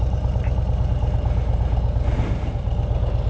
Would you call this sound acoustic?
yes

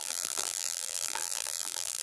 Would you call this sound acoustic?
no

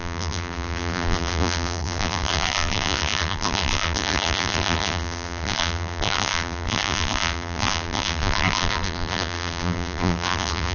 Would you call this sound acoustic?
no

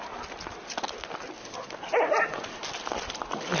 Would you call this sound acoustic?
yes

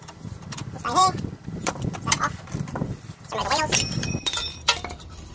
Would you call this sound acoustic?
no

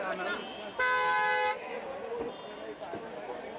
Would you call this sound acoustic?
yes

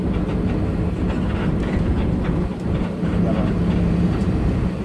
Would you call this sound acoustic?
yes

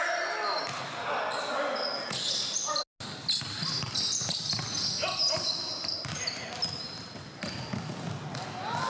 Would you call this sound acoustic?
yes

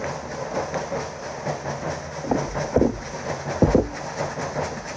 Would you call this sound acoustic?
yes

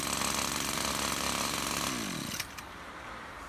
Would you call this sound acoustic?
yes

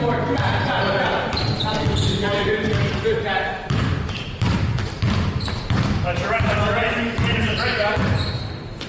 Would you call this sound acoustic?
no